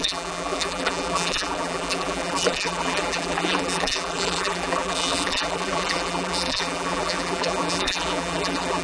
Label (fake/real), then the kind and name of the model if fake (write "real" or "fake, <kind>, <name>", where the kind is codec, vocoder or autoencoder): fake, vocoder, BigVGAN v2